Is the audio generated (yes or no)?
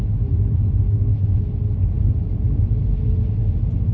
no